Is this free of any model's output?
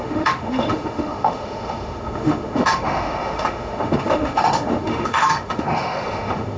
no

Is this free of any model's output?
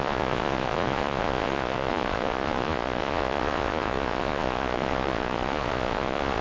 no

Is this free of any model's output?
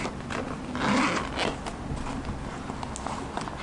yes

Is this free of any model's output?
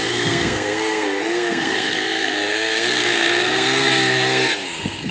no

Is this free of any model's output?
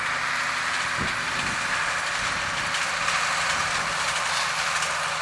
yes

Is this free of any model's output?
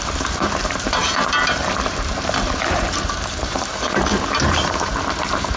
no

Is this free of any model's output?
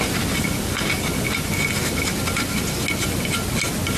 yes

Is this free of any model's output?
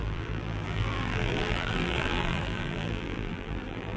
no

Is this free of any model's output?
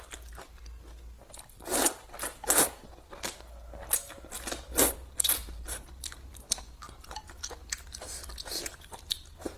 yes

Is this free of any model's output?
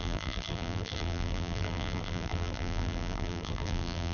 no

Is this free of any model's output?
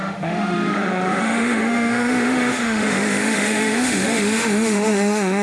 no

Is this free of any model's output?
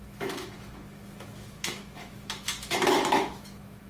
no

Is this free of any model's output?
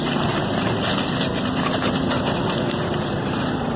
no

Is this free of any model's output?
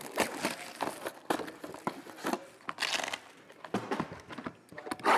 yes